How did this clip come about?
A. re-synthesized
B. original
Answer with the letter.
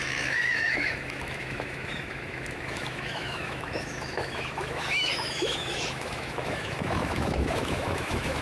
A